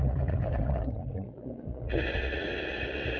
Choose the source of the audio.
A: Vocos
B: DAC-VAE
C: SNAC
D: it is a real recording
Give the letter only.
A